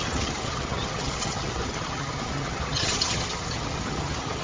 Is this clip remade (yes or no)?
yes